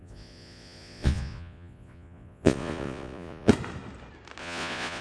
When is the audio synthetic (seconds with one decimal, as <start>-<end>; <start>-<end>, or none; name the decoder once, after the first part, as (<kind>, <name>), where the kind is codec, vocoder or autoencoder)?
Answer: 0.0-3.5 (vocoder, Vocos); 4.4-5.0